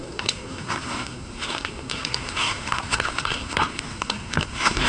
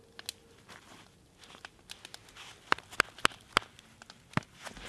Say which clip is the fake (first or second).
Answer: first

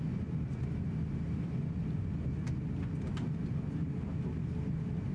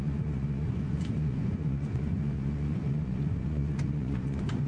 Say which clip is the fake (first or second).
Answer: second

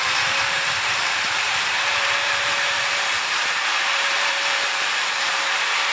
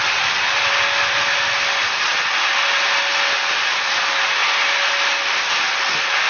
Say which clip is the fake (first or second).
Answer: first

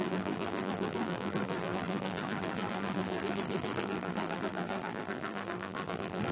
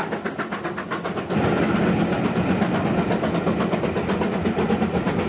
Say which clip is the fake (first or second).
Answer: first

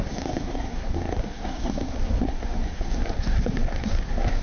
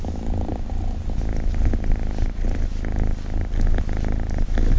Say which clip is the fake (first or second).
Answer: first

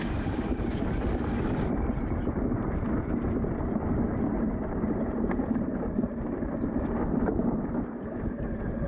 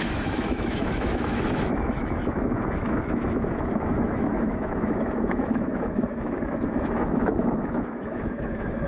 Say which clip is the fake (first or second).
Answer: second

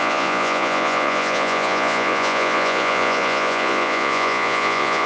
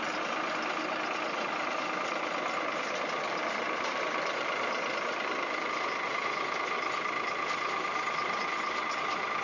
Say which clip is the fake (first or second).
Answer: first